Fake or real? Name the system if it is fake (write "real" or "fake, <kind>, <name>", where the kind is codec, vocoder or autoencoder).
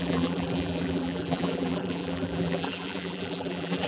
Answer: fake, vocoder, BigVGAN v2